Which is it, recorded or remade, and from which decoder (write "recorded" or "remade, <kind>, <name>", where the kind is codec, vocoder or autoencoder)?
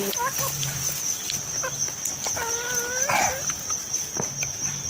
recorded